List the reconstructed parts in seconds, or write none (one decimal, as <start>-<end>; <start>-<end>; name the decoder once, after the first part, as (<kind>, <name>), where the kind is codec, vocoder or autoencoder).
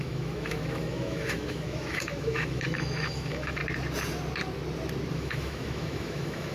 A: 0.0-3.6 (autoencoder, DAC-VAE); 5.1-6.5